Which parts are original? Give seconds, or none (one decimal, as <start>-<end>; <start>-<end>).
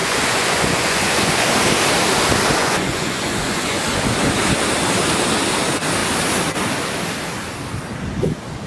1.5-2.6; 3.8-8.7